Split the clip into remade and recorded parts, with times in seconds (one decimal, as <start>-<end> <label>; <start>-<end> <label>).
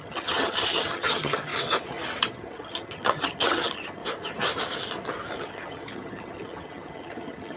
0.0-1.5 remade; 1.5-2.3 recorded; 2.3-4.0 remade; 4.0-5.4 recorded; 5.4-7.6 remade